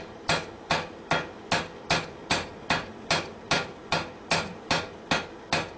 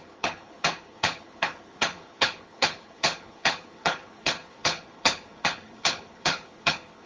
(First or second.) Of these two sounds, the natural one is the first